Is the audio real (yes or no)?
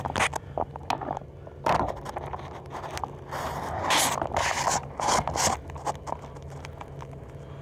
yes